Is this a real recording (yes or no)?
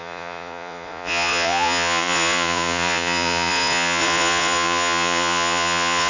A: no